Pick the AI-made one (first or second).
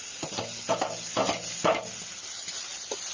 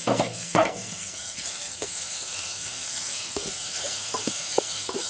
second